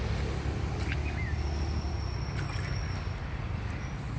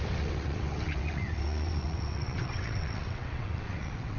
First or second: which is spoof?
second